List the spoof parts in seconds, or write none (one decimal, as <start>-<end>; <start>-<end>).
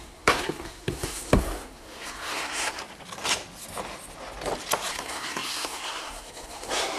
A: 0.0-2.8; 4.9-7.0